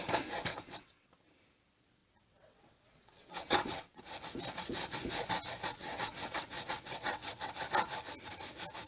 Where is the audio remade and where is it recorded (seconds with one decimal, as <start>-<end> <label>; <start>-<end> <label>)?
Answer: 0.0-0.5 recorded; 0.5-1.1 remade; 1.1-2.0 recorded; 2.0-4.0 remade; 4.0-5.7 recorded; 5.7-7.5 remade; 7.5-8.9 recorded